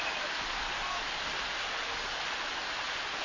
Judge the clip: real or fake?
real